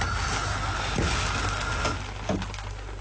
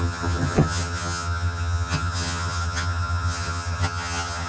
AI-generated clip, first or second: second